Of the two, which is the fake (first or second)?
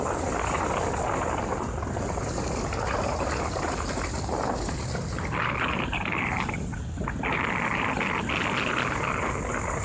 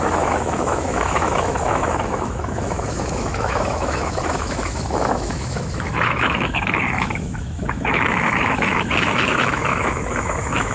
second